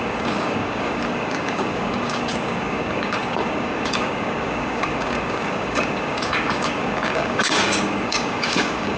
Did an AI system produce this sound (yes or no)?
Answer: yes